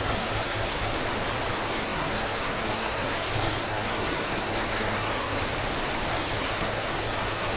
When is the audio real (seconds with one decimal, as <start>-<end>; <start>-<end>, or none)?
0.9-1.5; 5.4-6.1